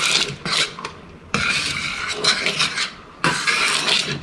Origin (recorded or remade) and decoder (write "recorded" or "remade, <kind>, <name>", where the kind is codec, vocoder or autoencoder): remade, vocoder, BigVGAN v2